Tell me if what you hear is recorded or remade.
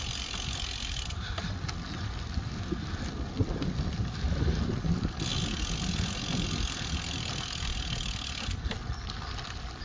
recorded